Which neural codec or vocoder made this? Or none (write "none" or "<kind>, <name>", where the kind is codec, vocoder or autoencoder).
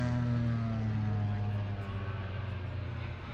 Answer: none